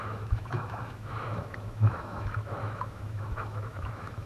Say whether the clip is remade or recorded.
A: remade